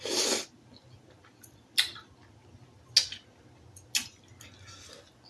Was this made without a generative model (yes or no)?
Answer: yes